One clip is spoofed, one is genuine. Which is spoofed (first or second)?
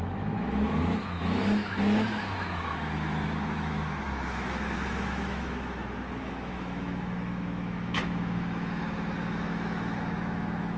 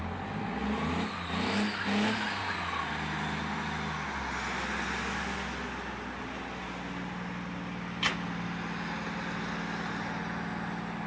first